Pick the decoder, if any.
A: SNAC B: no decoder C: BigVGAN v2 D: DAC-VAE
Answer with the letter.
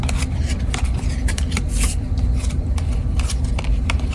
C